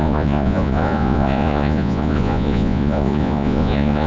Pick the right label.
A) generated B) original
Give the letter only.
A